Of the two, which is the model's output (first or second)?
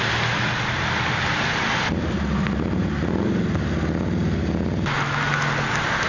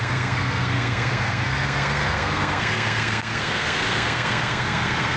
second